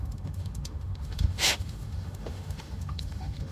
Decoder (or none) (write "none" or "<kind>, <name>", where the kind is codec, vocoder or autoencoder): autoencoder, DAC-VAE